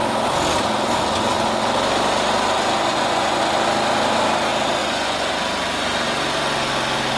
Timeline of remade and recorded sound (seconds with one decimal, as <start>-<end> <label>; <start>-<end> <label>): 0.0-2.9 recorded; 2.9-3.4 remade; 3.4-4.8 recorded; 4.8-5.3 remade; 5.3-7.2 recorded

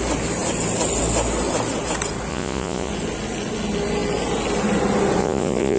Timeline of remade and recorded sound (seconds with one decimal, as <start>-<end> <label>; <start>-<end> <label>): 0.0-2.3 recorded; 2.3-2.9 remade; 2.9-5.2 recorded; 5.2-5.8 remade

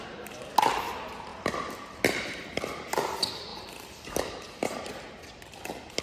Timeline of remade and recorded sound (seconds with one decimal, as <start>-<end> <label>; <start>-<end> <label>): 0.0-6.0 recorded

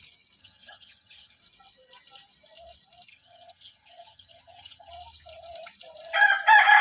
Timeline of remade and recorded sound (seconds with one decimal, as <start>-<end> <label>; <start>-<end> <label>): 0.0-0.4 recorded; 0.4-1.4 remade; 1.4-3.1 recorded; 3.1-4.9 remade; 4.9-6.8 recorded

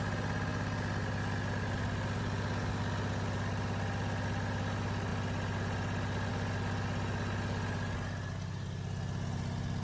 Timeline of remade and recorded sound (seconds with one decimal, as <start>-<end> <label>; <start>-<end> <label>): 0.0-9.8 recorded

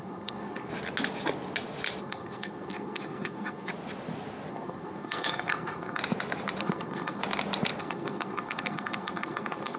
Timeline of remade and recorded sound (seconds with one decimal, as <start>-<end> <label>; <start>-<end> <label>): 0.0-0.7 remade; 0.7-2.0 recorded; 2.0-3.7 remade; 3.7-4.5 recorded; 4.5-6.0 remade; 6.0-6.6 recorded; 6.6-7.2 remade; 7.2-7.8 recorded; 7.8-9.8 remade

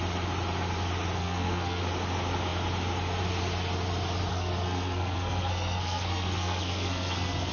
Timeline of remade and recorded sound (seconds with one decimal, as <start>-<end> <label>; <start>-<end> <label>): 0.0-1.2 recorded; 1.2-1.8 remade; 1.8-4.3 recorded; 4.3-7.5 remade

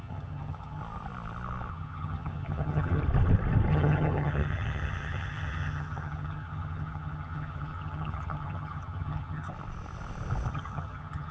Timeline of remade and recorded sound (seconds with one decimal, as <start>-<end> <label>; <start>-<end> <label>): 0.0-0.8 remade; 0.8-1.7 recorded; 1.7-3.0 remade; 3.0-3.7 recorded; 3.7-9.5 remade; 9.5-10.5 recorded; 10.5-11.3 remade